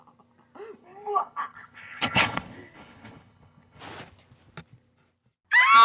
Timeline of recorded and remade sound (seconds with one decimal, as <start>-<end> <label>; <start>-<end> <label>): 0.0-0.8 recorded; 0.8-3.8 remade; 3.8-5.8 recorded